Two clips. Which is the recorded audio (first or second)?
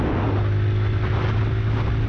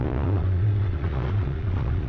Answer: first